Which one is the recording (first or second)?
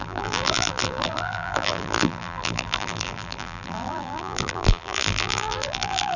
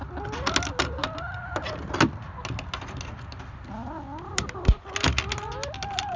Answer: second